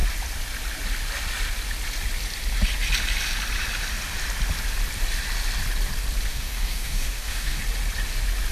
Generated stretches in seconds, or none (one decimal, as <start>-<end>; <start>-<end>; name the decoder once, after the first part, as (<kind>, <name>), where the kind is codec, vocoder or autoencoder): 6.3-7.6 (codec, DAC)